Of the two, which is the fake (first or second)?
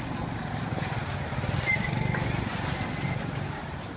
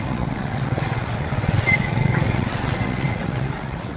second